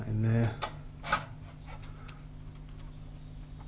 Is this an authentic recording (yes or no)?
yes